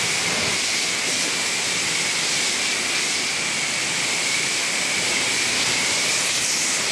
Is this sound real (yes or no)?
yes